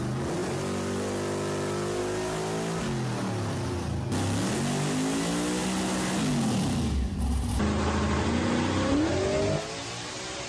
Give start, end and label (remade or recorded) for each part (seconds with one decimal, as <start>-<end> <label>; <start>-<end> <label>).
0.0-10.5 recorded

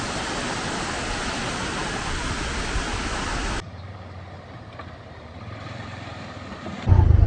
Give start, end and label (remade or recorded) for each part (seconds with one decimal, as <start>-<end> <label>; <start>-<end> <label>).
0.0-1.8 remade; 1.8-5.5 recorded; 5.5-7.3 remade

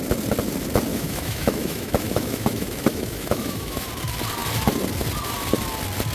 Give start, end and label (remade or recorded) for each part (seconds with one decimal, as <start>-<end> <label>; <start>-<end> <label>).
0.0-0.9 recorded; 0.9-3.9 remade; 3.9-6.1 recorded

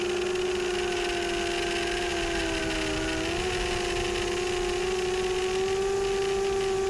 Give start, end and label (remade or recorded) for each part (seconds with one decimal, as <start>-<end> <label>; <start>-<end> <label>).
0.0-6.9 recorded

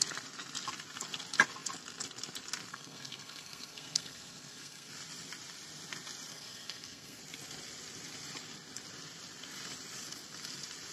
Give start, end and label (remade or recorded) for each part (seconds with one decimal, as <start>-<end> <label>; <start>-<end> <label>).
0.0-2.7 recorded; 2.7-4.9 remade; 4.9-6.3 recorded; 6.3-7.2 remade; 7.2-10.9 recorded

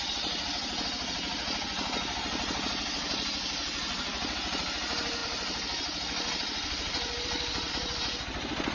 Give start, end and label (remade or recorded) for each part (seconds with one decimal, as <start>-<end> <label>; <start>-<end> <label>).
0.0-5.2 recorded; 5.2-7.7 remade; 7.7-8.7 recorded

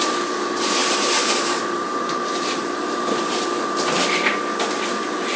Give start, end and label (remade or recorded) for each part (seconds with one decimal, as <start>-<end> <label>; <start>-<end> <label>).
0.0-5.4 remade

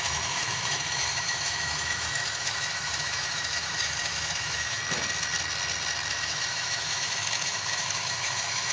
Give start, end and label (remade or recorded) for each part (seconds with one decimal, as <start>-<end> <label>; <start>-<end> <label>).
0.0-4.8 remade; 4.8-6.1 recorded; 6.1-8.7 remade